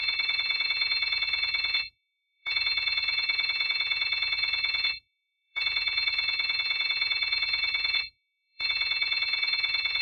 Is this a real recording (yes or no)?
no